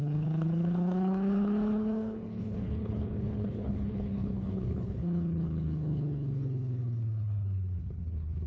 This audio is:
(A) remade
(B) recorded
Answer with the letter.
A